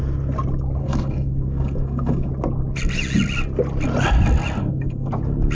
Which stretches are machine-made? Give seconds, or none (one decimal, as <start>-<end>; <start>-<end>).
0.8-2.3; 4.6-5.1